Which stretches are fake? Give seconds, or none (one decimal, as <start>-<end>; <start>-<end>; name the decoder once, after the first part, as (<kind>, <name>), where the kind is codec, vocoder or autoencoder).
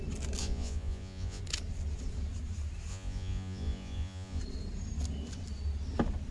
0.4-1.4 (vocoder, Vocos); 2.9-4.4